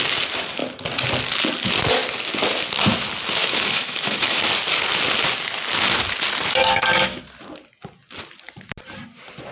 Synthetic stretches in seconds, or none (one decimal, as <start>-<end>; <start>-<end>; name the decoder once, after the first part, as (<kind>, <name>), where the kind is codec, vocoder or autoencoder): 3.4-4.4 (autoencoder, DAC-VAE); 6.6-7.2